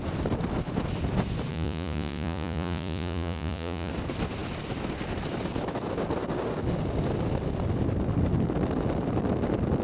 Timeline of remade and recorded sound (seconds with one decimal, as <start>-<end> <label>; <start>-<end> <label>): 0.0-1.5 recorded; 1.5-3.9 remade; 3.9-9.8 recorded